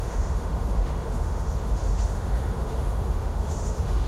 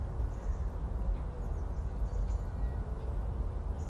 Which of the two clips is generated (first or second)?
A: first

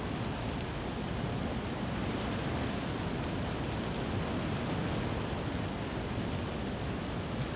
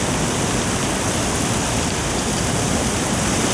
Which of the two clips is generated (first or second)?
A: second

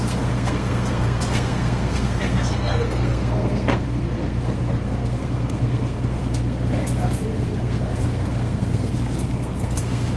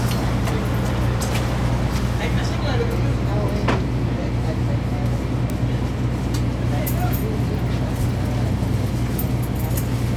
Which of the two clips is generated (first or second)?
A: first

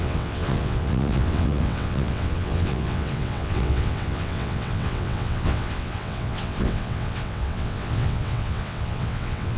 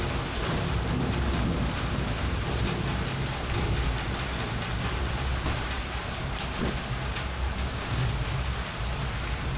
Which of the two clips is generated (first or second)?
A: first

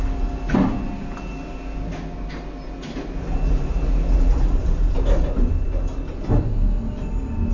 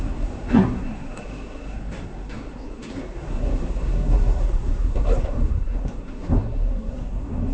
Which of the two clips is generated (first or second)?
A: second